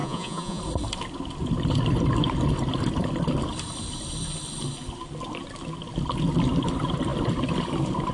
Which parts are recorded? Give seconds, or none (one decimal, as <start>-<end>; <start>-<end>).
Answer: 0.6-8.1